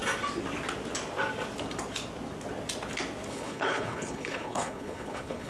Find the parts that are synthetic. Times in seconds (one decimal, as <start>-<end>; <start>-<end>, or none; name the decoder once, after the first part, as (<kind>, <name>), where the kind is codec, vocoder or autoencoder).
3.3-5.5 (codec, HILCodec)